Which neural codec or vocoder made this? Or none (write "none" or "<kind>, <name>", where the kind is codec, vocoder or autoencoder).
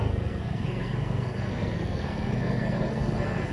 codec, SNAC